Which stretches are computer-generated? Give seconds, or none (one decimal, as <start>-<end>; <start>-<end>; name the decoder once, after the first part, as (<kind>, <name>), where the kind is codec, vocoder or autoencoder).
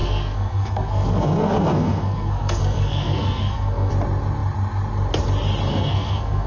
0.0-3.9 (codec, SNAC); 5.7-6.5